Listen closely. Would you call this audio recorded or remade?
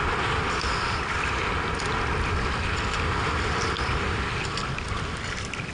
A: recorded